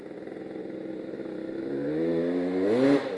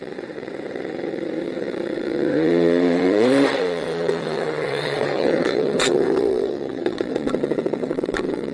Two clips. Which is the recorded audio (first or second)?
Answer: first